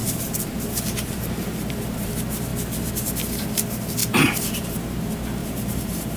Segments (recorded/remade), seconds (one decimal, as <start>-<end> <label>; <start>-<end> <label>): 0.0-2.1 remade; 2.1-4.0 recorded; 4.0-5.0 remade; 5.0-5.4 recorded; 5.4-6.2 remade